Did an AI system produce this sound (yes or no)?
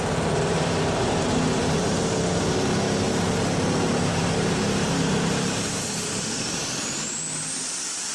yes